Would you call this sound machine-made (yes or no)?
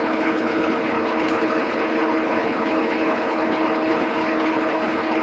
yes